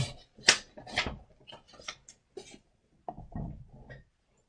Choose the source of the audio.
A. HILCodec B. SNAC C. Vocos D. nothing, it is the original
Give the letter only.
D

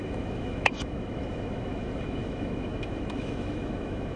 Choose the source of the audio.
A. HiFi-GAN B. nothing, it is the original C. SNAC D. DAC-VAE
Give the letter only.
D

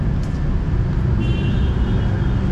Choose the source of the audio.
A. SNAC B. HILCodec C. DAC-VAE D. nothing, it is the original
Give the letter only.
D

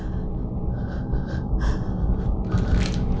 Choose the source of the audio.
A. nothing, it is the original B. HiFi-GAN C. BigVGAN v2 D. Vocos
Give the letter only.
A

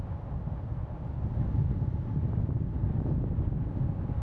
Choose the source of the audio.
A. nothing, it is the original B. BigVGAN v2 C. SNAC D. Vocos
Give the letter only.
A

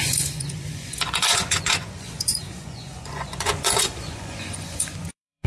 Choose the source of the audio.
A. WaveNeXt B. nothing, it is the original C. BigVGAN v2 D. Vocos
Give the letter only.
D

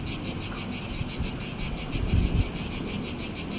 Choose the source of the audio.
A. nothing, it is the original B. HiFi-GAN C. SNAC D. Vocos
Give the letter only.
A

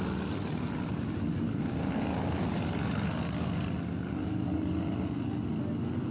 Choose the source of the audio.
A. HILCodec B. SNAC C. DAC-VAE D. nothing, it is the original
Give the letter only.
D